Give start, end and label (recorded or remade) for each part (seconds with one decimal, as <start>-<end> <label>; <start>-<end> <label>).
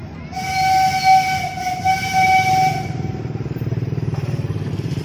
0.0-1.9 recorded; 1.9-5.0 remade